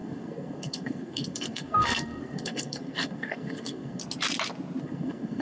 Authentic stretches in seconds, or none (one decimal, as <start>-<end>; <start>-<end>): 4.0-4.8